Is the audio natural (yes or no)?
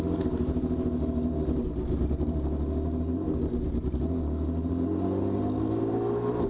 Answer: yes